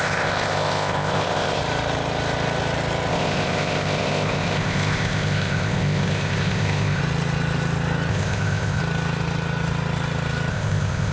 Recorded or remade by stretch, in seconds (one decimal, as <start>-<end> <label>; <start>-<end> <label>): 0.0-1.6 remade; 1.6-3.1 recorded; 3.1-7.0 remade; 7.0-8.1 recorded; 8.1-8.8 remade; 8.8-10.5 recorded; 10.5-11.1 remade